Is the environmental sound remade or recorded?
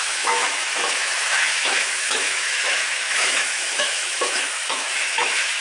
remade